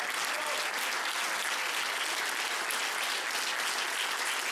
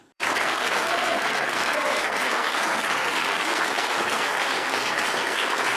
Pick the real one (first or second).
first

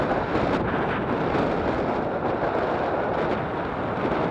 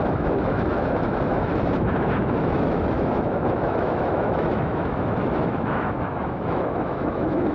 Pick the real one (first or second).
first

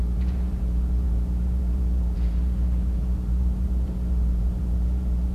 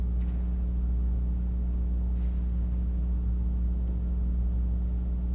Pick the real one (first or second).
second